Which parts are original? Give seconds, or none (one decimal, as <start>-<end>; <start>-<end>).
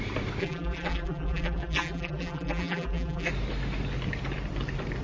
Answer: 0.0-0.4; 3.3-5.0